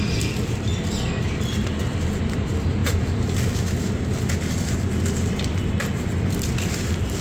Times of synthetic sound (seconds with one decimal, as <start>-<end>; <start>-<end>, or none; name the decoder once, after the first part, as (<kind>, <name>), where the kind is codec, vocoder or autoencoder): 2.8-3.9 (vocoder, BigVGAN v2)